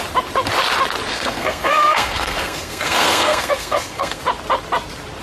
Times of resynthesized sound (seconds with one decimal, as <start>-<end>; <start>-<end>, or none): 1.1-4.2